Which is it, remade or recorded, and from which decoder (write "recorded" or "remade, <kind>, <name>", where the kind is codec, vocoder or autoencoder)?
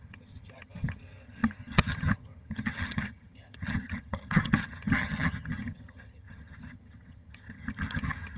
remade, vocoder, HiFi-GAN